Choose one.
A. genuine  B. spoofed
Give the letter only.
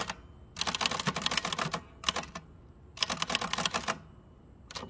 A